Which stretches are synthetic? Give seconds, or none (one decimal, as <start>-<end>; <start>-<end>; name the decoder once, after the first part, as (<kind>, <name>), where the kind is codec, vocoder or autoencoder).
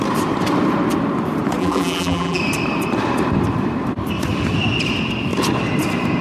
1.6-2.4 (vocoder, BigVGAN v2)